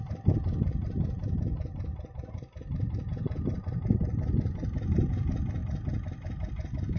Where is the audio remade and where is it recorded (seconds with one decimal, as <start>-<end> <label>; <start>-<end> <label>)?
0.0-7.0 recorded